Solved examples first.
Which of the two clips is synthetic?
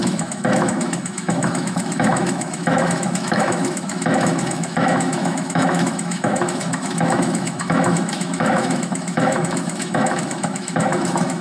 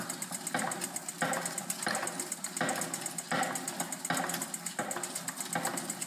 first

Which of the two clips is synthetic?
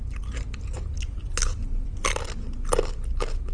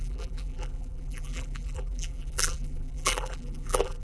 second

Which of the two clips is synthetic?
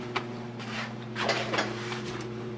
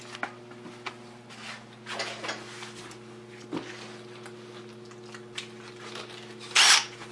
first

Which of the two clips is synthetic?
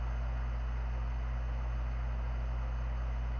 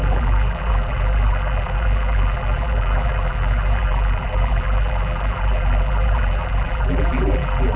second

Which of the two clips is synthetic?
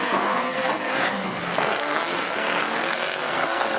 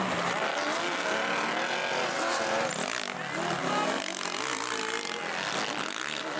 first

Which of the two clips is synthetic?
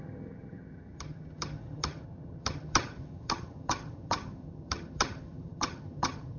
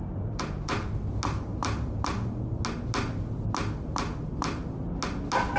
first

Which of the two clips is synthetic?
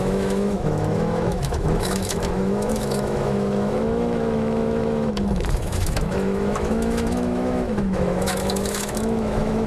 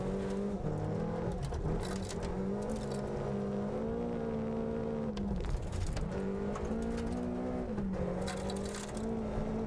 first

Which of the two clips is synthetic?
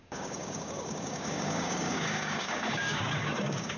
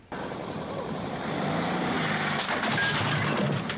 first